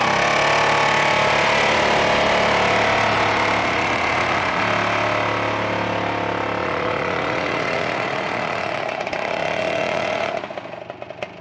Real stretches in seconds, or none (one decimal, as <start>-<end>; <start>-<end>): 0.0-3.6; 4.6-6.6; 10.4-11.4